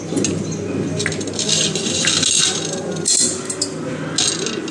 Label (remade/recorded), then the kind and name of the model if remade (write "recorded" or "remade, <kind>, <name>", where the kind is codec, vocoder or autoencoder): recorded